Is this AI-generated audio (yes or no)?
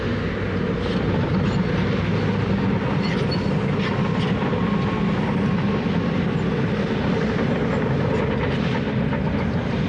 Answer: no